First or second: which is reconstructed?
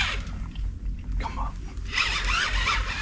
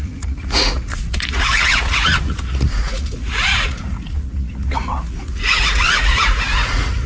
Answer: second